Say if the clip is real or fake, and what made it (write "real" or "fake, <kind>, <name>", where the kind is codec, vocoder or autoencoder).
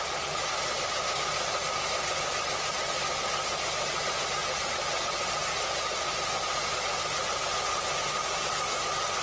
real